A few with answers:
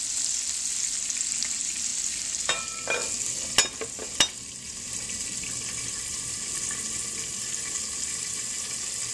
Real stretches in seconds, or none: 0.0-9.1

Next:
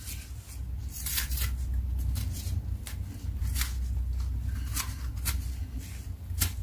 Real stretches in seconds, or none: 0.0-6.6

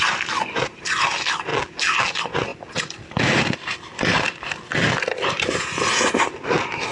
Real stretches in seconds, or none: 0.0-1.5; 2.1-6.9

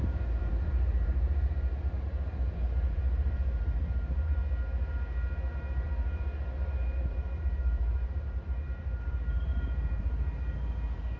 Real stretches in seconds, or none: 4.4-5.5

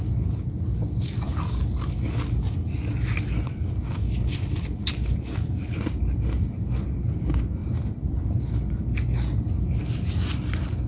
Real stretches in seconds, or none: 0.0-7.6; 8.8-10.9

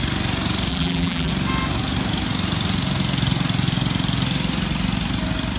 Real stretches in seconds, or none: 0.0-0.7; 1.3-5.6

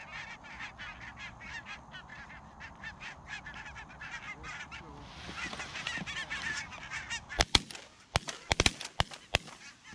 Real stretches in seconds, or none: 0.0-2.1; 4.8-6.2; 7.0-9.9

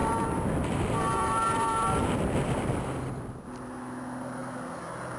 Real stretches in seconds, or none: 4.4-5.2